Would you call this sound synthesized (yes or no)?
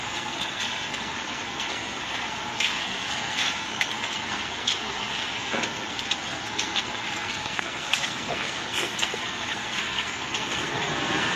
yes